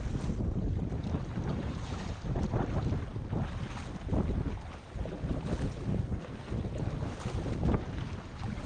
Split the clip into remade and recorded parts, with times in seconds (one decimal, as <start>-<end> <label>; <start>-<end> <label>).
0.0-5.9 recorded; 5.9-6.5 remade; 6.5-8.7 recorded